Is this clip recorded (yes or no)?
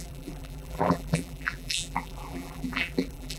no